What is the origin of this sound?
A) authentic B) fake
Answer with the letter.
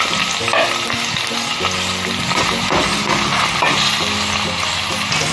A